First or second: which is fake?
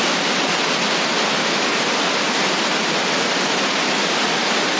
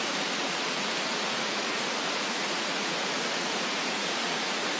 second